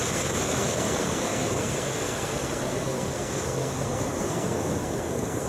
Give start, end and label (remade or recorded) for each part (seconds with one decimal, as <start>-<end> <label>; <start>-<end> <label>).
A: 0.0-5.5 remade